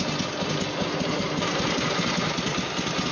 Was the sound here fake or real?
real